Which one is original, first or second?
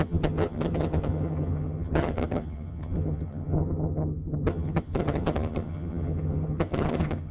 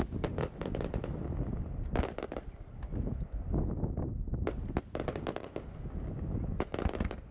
second